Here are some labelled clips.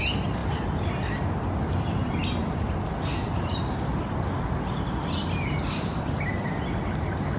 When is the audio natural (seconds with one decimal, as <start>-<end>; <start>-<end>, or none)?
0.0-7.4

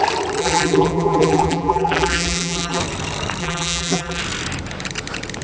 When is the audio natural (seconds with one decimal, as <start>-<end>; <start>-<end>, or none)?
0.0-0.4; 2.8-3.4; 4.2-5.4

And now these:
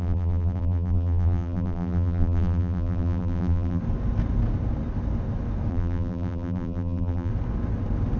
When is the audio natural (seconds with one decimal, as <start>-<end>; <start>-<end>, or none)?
3.8-5.7; 7.3-8.2

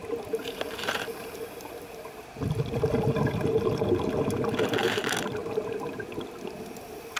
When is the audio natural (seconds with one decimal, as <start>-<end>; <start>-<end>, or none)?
4.3-5.4; 6.1-7.2

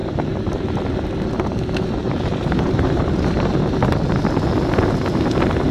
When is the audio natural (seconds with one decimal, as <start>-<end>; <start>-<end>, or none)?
0.0-2.0; 3.5-5.7

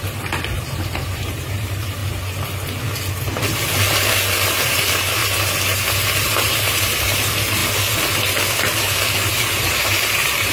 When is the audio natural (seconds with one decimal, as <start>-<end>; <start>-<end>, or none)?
2.0-4.5; 5.2-6.2; 7.6-9.3

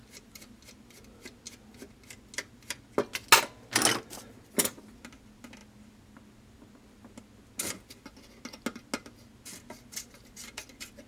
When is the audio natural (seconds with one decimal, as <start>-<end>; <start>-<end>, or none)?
0.6-11.1

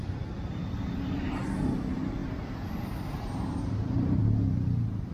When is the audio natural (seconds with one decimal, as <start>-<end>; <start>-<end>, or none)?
0.0-2.2; 4.2-5.1